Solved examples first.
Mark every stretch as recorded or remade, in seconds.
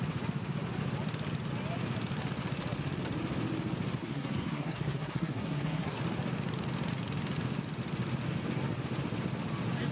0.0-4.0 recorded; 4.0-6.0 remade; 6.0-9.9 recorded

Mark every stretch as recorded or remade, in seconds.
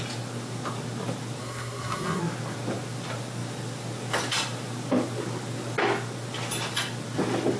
0.0-1.4 recorded; 1.4-2.2 remade; 2.2-7.6 recorded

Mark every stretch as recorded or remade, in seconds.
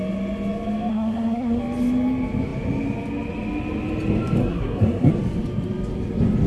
0.0-0.9 recorded; 0.9-1.6 remade; 1.6-4.4 recorded; 4.4-5.1 remade; 5.1-6.5 recorded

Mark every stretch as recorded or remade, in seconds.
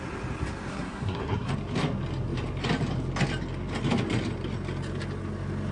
0.0-0.7 recorded; 0.7-1.5 remade; 1.5-5.7 recorded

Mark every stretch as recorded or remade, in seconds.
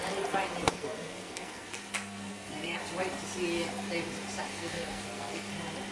0.0-0.7 recorded; 0.7-2.8 remade; 2.8-4.5 recorded; 4.5-5.5 remade; 5.5-5.9 recorded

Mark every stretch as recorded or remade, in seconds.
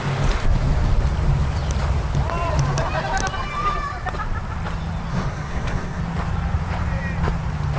0.0-5.1 recorded; 5.1-6.0 remade; 6.0-7.8 recorded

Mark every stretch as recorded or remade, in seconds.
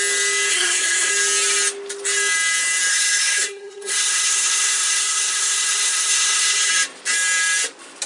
0.0-0.5 recorded; 0.5-1.1 remade; 1.1-2.9 recorded; 2.9-6.7 remade; 6.7-8.1 recorded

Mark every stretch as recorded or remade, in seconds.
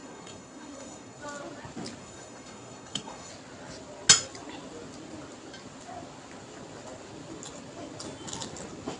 0.0-1.2 remade; 1.2-2.0 recorded; 2.0-3.3 remade; 3.3-9.0 recorded